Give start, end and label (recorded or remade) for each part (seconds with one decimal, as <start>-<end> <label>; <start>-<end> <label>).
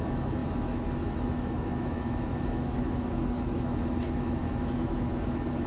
0.0-5.7 remade